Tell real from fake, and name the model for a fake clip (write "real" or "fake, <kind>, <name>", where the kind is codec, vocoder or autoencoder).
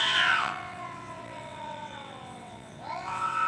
fake, vocoder, WaveNeXt